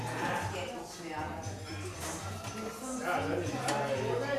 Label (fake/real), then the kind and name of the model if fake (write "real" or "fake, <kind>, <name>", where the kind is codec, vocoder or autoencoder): real